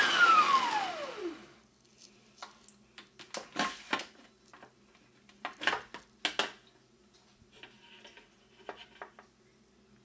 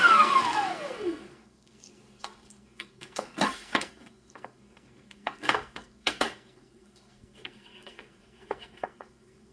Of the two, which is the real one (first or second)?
first